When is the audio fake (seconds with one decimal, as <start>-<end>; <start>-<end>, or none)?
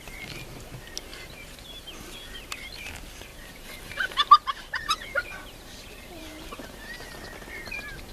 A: 1.1-1.9; 3.3-7.1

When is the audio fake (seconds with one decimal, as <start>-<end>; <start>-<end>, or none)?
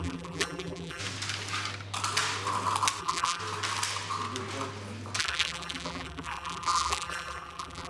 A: 0.0-1.0; 3.0-3.4; 5.2-7.9